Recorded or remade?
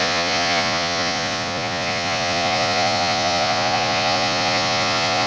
remade